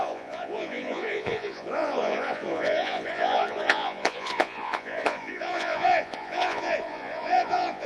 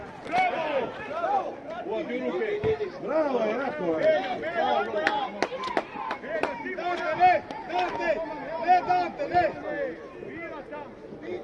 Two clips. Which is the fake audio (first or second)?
first